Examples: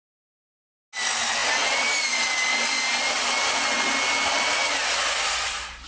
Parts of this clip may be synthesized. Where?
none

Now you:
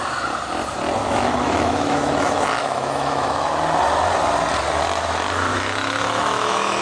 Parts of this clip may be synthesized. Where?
1.0-3.5; 5.5-6.8

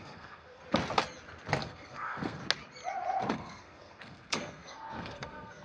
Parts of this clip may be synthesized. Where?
0.0-0.6; 1.6-2.4; 3.3-5.6